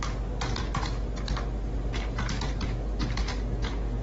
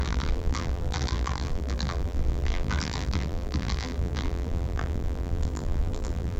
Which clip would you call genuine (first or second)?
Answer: first